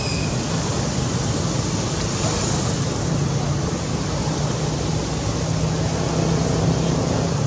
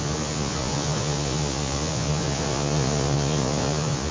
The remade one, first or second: second